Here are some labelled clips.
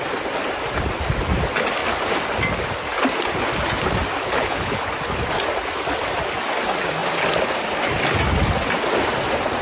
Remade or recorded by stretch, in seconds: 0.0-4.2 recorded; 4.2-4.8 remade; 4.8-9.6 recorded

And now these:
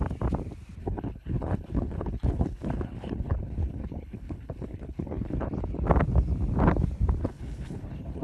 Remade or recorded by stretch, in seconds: 0.0-0.8 recorded; 0.8-5.5 remade; 5.5-7.2 recorded; 7.2-8.2 remade

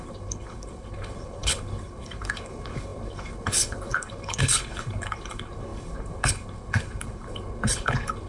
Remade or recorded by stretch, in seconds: 0.0-8.3 remade